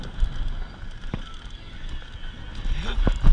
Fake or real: real